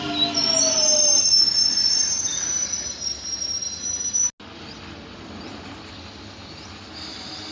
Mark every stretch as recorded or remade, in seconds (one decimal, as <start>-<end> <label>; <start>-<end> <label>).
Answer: 0.0-7.5 recorded